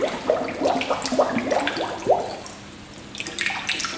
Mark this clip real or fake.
real